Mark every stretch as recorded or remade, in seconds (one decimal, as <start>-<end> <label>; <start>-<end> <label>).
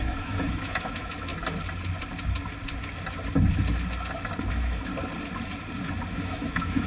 0.0-1.3 remade; 1.3-4.5 recorded; 4.5-4.9 remade; 4.9-6.1 recorded; 6.1-6.9 remade